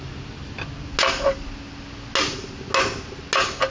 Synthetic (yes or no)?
no